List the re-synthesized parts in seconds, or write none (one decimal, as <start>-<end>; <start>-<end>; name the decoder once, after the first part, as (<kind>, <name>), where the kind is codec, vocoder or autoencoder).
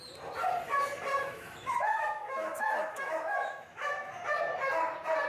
1.1-4.1 (autoencoder, DAC-VAE)